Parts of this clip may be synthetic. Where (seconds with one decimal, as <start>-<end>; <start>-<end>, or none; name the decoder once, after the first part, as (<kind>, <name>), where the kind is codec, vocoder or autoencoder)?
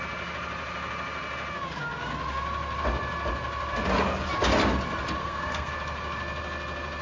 5.2-5.7 (codec, SNAC)